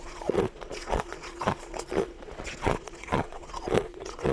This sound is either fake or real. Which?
fake